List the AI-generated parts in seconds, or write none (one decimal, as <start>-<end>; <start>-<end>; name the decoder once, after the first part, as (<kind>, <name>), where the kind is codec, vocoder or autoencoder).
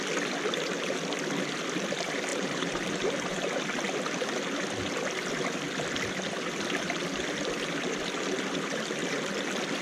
2.3-3.4 (vocoder, BigVGAN v2)